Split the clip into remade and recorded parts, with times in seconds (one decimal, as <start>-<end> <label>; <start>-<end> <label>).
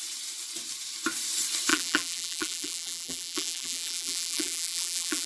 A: 0.0-1.7 recorded; 1.7-5.3 remade